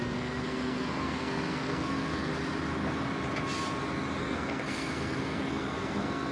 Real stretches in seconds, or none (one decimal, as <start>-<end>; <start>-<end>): 2.3-4.2